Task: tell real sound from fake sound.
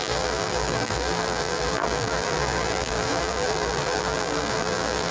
fake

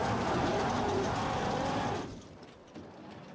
real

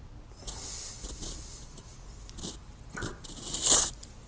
real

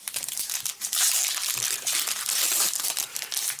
fake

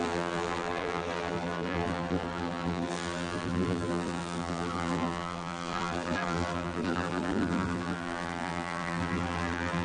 fake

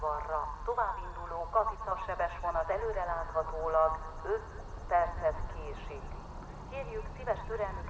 real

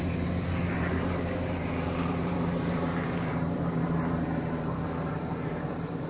fake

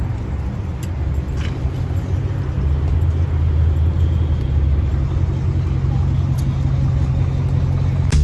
real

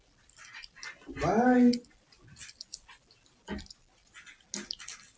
real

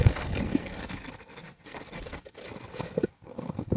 fake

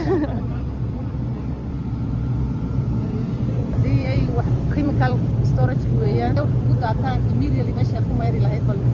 fake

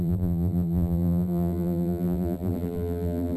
fake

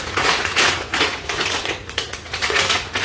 fake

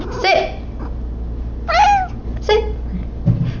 real